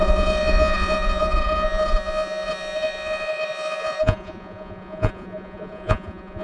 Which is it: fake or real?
fake